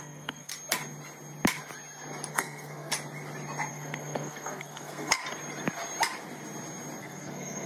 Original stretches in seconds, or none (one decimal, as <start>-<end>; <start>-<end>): 0.5-2.3; 2.9-3.7; 5.2-7.0